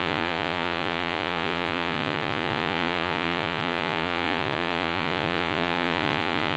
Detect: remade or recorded remade